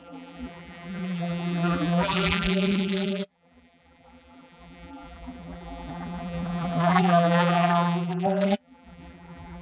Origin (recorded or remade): remade